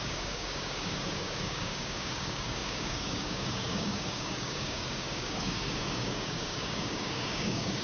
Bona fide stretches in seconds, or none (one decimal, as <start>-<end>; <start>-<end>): none